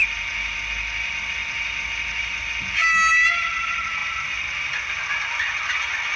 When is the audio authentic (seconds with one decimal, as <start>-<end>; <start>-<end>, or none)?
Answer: 0.0-6.2

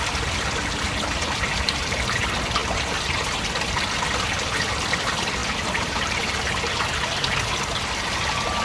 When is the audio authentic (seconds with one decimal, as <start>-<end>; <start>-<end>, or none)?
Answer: 0.0-1.1; 2.0-2.6; 3.4-5.4; 6.2-8.6

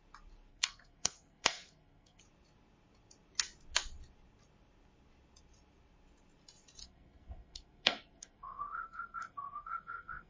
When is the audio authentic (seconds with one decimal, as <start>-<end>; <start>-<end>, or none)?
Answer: 0.0-0.5; 2.2-6.8

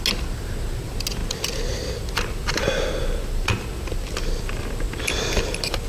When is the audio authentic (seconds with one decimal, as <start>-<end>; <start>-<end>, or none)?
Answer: 0.0-5.9

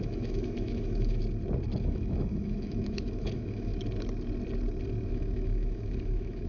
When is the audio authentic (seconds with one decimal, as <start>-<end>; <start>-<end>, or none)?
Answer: 1.2-1.8; 3.7-5.1

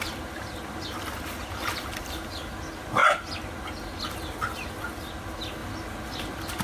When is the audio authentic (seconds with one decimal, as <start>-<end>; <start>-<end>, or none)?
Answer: 0.0-6.6

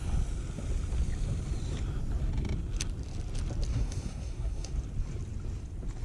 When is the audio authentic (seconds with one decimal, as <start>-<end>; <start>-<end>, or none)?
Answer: 0.0-3.7; 4.7-6.0